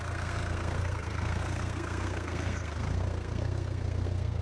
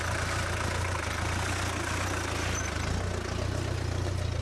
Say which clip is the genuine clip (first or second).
second